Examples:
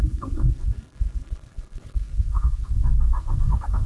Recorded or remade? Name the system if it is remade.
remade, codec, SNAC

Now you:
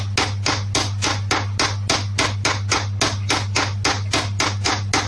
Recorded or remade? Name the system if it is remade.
recorded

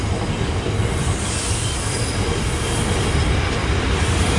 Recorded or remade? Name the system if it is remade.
recorded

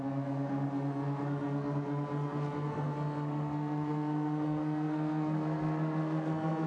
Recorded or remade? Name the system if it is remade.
remade, codec, SNAC